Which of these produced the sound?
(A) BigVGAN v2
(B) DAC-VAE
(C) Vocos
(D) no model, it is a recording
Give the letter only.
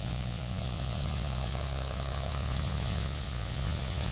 C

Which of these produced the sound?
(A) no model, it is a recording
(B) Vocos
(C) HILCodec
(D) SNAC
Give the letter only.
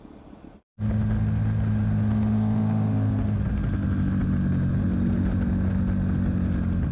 A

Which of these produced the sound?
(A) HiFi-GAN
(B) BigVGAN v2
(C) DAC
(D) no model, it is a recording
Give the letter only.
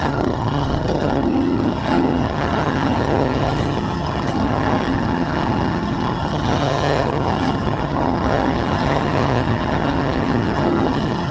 A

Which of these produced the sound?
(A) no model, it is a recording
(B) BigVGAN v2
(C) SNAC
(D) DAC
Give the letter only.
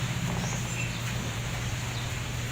A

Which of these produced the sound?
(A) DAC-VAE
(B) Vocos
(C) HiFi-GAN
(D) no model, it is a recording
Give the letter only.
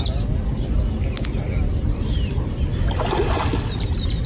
D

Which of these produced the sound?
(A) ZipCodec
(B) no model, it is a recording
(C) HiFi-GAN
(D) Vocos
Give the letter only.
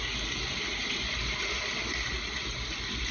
B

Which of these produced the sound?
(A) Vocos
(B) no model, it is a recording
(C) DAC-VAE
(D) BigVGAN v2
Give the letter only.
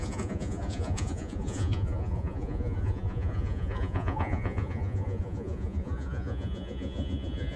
A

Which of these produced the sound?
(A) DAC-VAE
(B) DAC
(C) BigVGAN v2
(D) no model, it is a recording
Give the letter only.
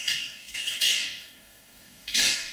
B